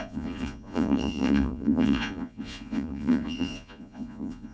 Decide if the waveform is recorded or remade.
remade